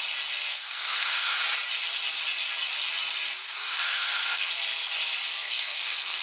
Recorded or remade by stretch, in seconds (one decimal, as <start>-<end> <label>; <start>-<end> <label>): 0.0-0.5 recorded; 0.5-1.4 remade; 1.4-3.4 recorded; 3.4-4.5 remade; 4.5-5.3 recorded; 5.3-6.2 remade